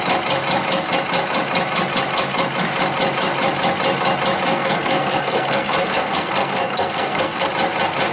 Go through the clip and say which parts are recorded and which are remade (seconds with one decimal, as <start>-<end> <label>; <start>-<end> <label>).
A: 0.0-4.5 recorded; 4.5-7.5 remade; 7.5-8.1 recorded